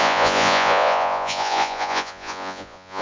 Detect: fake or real fake